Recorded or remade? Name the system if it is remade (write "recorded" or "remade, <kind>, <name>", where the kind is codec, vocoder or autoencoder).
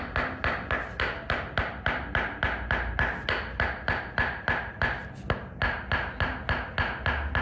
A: recorded